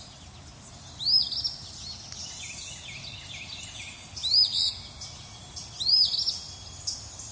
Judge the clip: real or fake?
real